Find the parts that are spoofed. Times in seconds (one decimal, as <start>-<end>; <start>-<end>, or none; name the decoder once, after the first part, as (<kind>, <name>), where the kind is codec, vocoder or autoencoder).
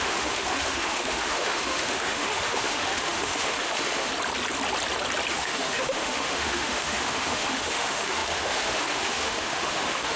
0.0-4.1 (autoencoder, DAC-VAE); 5.3-10.2